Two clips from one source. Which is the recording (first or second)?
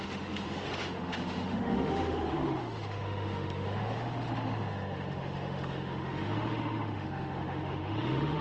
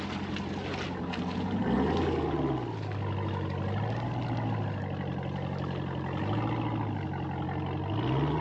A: second